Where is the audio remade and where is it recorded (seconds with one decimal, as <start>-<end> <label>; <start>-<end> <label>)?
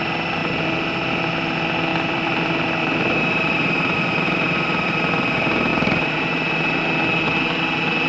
0.0-1.9 recorded; 1.9-4.9 remade; 4.9-5.7 recorded; 5.7-6.8 remade; 6.8-8.1 recorded